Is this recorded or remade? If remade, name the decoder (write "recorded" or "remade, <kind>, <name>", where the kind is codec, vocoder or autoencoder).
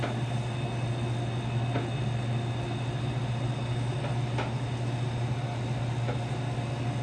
recorded